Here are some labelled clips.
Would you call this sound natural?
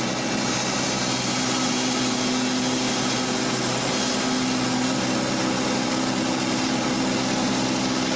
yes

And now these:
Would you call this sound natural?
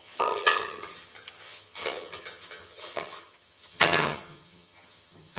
no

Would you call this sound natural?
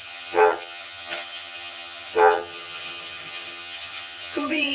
no